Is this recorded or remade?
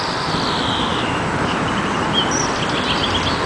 recorded